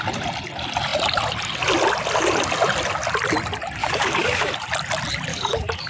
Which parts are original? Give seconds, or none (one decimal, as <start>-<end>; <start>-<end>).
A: 0.0-3.8; 4.5-5.3